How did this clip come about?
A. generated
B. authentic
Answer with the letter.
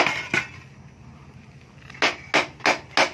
B